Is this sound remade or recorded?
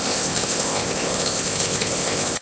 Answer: remade